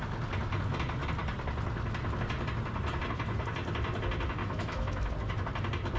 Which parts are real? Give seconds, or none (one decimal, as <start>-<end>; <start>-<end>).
0.0-4.4; 5.1-6.0